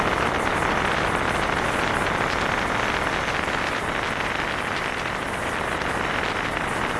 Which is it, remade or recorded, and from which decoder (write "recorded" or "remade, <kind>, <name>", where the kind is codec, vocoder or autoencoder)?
recorded